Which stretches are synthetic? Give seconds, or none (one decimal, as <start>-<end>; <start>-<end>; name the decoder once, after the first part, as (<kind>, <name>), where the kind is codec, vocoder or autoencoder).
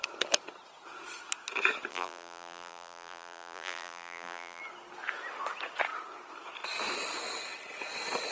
1.9-4.6 (vocoder, BigVGAN v2)